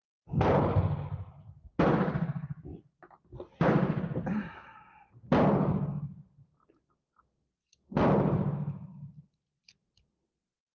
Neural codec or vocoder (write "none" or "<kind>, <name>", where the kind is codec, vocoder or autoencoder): none